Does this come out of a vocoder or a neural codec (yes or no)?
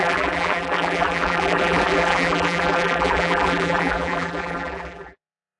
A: yes